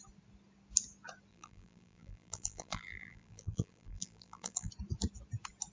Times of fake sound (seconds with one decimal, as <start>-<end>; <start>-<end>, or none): 1.3-4.7